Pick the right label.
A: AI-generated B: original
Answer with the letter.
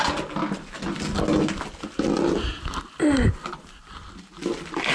B